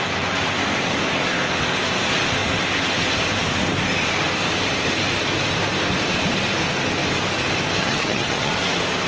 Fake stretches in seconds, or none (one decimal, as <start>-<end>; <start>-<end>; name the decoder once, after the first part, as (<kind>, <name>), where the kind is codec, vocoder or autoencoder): 7.8-8.5 (vocoder, HiFi-GAN)